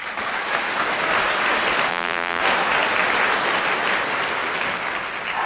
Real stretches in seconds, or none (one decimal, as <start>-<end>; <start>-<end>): 0.0-1.9; 2.4-5.5